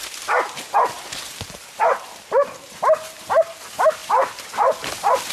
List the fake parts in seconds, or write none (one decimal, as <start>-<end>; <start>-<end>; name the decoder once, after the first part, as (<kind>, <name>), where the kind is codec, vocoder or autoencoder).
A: none

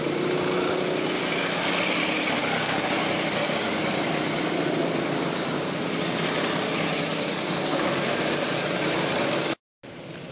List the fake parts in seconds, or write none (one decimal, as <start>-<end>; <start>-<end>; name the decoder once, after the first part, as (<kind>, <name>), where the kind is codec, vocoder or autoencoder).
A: 2.4-2.9 (codec, DAC); 7.1-8.2